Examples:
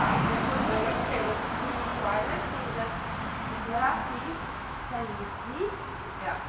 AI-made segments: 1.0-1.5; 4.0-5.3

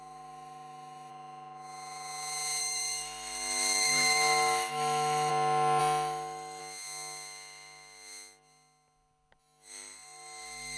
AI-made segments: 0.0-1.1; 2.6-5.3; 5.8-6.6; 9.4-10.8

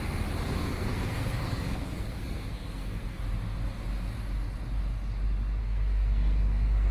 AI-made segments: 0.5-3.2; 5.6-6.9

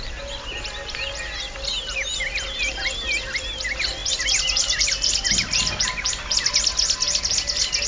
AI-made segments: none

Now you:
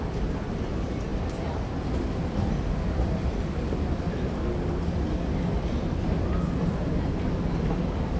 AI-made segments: none

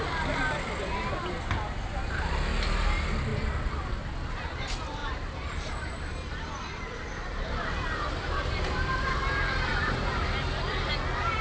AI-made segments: 5.0-9.1; 9.7-10.3

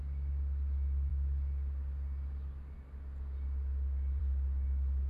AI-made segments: none

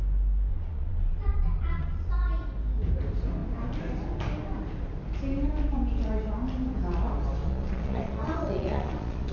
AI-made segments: 0.5-2.1; 7.4-9.3